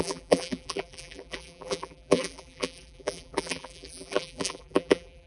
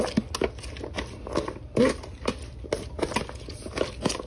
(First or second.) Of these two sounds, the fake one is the first